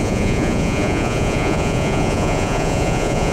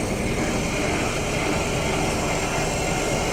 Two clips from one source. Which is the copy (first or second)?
first